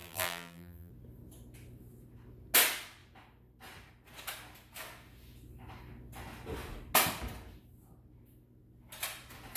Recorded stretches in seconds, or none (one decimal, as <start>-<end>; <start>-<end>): 0.9-9.6